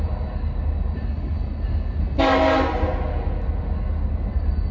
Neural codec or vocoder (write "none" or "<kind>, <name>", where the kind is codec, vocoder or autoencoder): none